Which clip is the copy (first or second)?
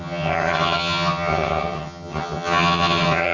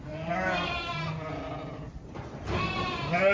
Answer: first